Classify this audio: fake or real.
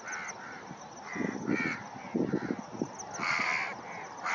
real